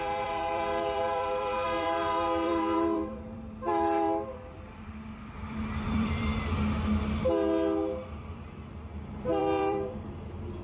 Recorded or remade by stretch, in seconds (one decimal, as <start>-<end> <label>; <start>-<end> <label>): 0.0-6.3 remade; 6.3-8.6 recorded; 8.6-10.6 remade